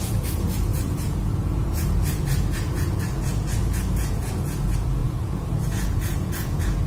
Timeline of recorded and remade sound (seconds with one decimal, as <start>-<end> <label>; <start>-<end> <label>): 0.0-6.9 remade